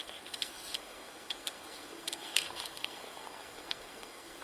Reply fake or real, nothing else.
fake